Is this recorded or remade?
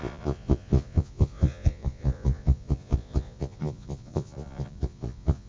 remade